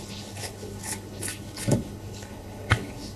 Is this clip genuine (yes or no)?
no